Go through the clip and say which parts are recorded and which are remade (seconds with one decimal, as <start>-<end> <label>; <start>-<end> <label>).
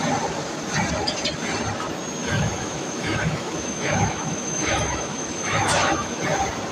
0.0-2.2 recorded; 2.2-6.2 remade; 6.2-6.7 recorded